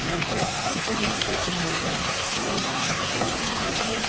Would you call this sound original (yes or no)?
no